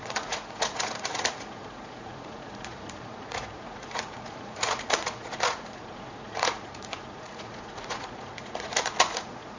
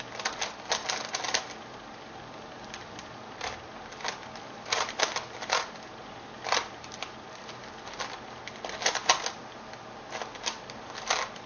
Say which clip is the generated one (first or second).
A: first